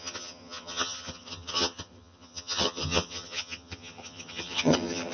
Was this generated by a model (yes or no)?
yes